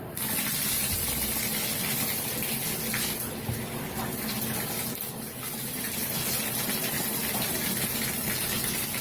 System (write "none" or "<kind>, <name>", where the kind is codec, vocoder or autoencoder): none